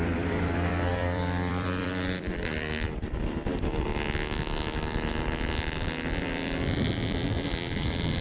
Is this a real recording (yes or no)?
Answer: no